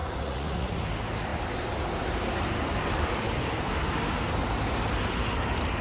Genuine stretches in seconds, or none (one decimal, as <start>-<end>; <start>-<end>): 0.8-5.8

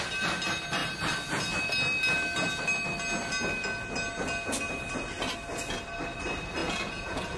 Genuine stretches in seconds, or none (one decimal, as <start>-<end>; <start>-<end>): 0.0-6.6

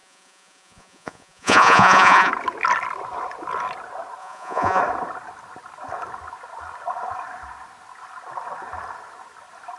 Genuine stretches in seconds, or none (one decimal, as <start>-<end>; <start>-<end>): 2.3-4.2; 4.8-9.8

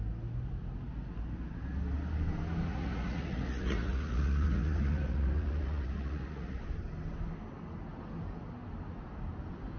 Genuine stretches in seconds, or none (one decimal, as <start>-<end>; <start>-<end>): 0.0-2.7; 6.6-9.8

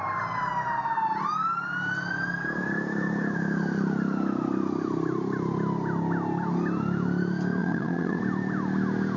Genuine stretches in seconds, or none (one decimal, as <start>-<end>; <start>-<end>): 0.0-7.6; 8.2-9.2

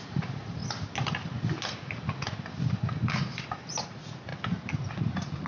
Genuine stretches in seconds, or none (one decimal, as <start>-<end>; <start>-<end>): 0.6-3.9; 4.3-4.9

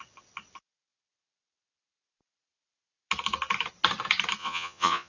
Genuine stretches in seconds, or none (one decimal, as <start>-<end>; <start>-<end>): 0.0-4.4

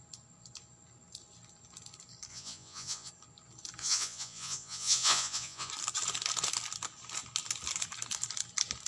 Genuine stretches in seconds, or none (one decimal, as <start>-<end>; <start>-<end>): 0.0-2.3; 3.1-3.8; 5.7-8.9